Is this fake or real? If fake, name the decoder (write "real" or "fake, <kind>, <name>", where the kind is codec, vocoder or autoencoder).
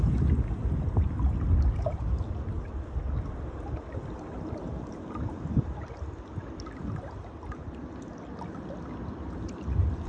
real